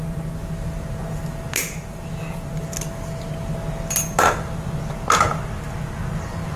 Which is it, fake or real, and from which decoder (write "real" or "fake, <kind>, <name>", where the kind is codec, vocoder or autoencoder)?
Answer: real